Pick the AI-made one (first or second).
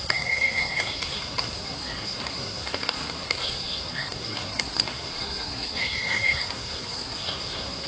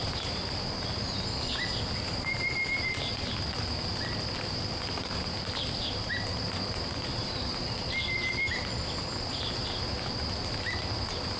first